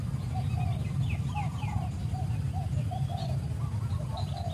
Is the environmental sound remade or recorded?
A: recorded